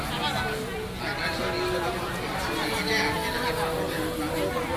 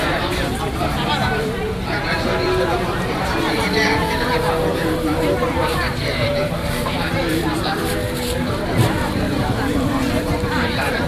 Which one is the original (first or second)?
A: first